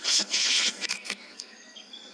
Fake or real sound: fake